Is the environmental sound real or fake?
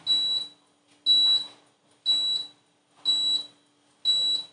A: real